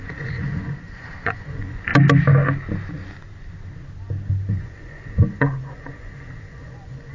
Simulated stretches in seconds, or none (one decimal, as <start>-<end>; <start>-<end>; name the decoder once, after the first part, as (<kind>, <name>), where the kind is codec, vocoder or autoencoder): 0.0-1.9 (vocoder, Vocos); 4.5-7.1